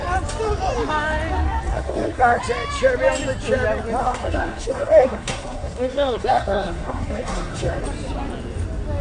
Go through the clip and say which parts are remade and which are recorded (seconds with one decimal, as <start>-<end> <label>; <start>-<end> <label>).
0.0-1.7 recorded; 1.7-2.4 remade; 2.4-4.0 recorded; 4.0-7.8 remade; 7.8-9.0 recorded